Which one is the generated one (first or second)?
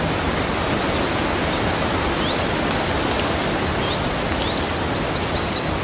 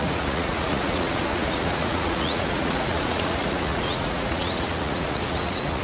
second